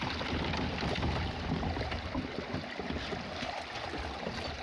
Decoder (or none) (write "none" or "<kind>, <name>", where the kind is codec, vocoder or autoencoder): none